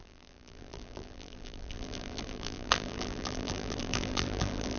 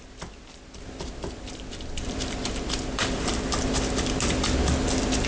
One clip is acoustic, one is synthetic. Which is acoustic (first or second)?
second